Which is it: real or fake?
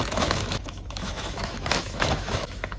fake